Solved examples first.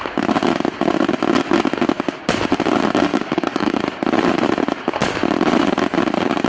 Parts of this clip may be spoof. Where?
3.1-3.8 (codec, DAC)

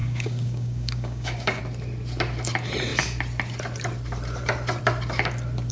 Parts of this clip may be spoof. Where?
0.0-1.6 (codec, DAC)

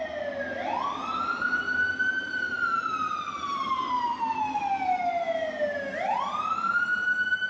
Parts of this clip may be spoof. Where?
none